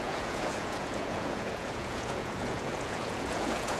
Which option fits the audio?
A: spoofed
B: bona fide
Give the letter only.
A